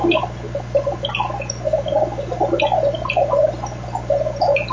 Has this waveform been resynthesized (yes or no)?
no